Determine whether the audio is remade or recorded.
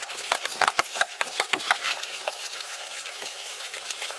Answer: remade